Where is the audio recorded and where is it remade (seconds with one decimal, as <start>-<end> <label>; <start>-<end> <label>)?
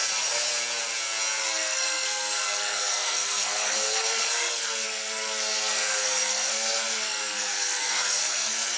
0.0-1.4 recorded; 1.4-8.8 remade